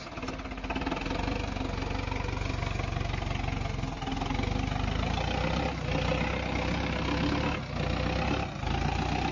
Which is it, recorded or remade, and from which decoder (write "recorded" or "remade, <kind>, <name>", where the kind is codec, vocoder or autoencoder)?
recorded